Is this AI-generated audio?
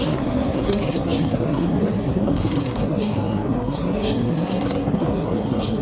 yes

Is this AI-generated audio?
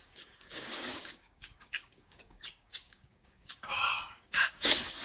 yes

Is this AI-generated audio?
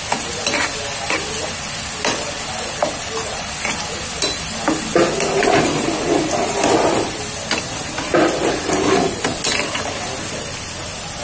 no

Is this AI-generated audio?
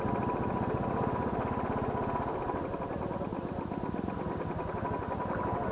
no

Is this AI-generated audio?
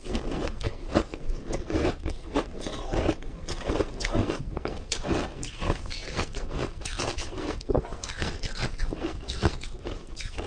yes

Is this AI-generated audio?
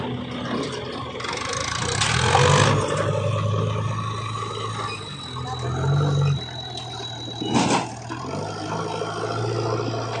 no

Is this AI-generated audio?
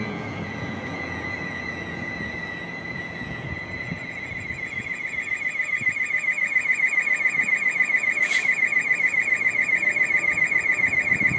yes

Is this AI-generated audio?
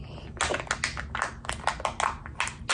no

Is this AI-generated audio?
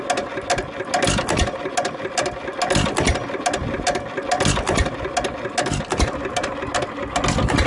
no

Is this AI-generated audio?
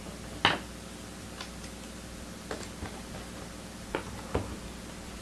no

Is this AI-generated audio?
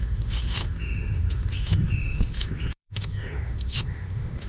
yes